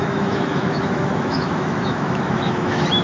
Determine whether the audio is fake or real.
fake